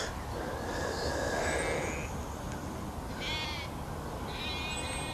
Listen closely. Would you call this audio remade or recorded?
recorded